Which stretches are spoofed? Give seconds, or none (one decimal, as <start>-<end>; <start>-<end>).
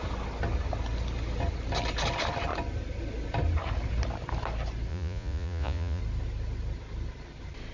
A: 4.9-6.0